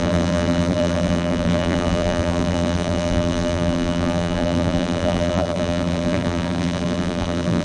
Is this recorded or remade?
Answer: remade